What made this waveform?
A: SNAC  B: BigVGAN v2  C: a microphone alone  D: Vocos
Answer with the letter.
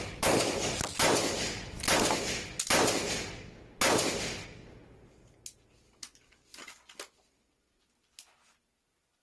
C